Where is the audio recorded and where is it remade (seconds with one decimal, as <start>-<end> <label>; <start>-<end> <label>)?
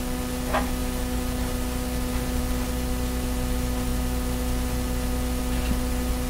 0.0-6.3 recorded